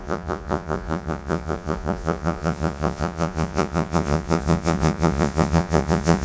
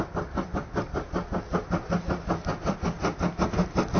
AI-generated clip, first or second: first